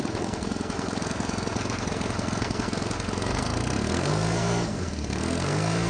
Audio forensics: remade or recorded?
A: remade